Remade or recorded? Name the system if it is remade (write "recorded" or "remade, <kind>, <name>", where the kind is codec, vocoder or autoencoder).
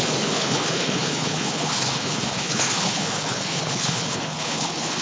remade, codec, HILCodec